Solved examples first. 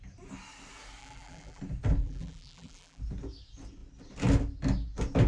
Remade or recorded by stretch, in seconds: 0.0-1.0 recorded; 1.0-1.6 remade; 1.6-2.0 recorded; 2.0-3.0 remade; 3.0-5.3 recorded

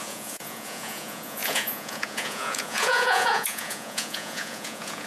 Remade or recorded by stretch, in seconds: 0.0-5.1 remade

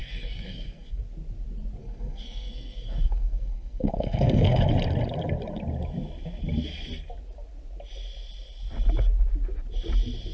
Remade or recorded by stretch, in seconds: 0.0-1.0 remade; 1.0-1.8 recorded; 1.8-4.6 remade; 4.6-10.3 recorded

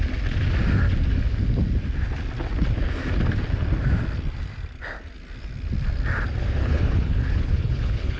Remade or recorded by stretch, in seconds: 0.0-6.6 recorded; 6.6-8.2 remade

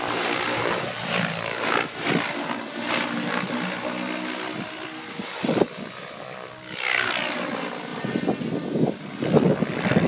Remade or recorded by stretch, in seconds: 0.0-10.1 recorded